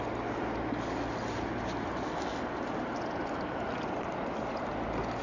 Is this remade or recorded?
recorded